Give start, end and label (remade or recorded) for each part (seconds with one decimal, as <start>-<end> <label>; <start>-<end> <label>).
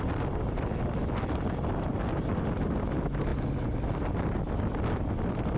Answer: 0.0-5.6 recorded